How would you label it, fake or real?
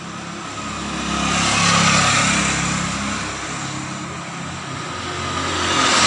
real